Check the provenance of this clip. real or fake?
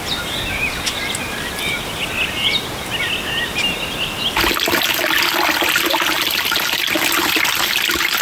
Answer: real